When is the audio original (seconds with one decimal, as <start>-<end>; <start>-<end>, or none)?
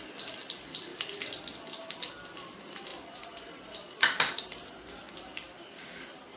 0.0-0.9; 2.1-2.9